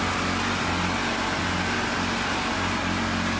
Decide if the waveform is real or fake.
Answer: real